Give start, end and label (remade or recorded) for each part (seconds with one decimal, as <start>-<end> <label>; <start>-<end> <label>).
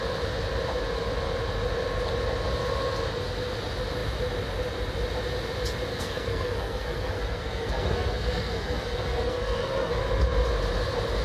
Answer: 0.0-5.9 recorded; 5.9-10.0 remade; 10.0-11.2 recorded